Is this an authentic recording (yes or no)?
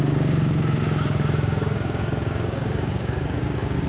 no